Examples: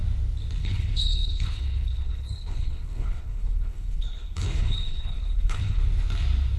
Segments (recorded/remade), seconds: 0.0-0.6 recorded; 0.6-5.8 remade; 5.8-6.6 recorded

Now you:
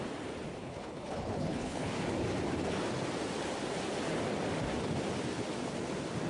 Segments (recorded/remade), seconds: 0.0-0.6 recorded; 0.6-1.9 remade; 1.9-6.3 recorded

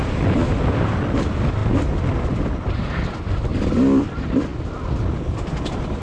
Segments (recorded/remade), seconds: 0.0-6.0 recorded

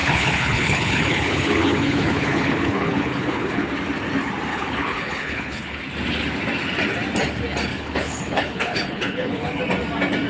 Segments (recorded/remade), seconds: 0.0-3.7 remade; 3.7-4.5 recorded; 4.5-5.8 remade; 5.8-7.7 recorded; 7.7-9.6 remade; 9.6-10.3 recorded

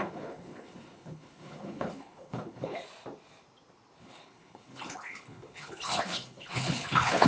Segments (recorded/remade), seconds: 0.0-2.8 remade; 2.8-4.0 recorded; 4.0-7.3 remade

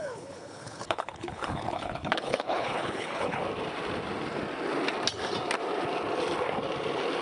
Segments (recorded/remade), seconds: 0.0-3.4 remade; 3.4-7.2 recorded

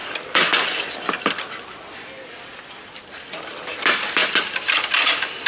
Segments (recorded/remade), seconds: 0.0-5.5 recorded

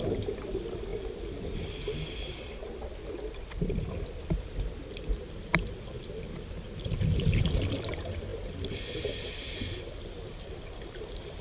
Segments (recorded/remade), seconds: 0.0-11.4 recorded